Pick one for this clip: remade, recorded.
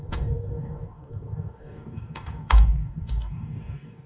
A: remade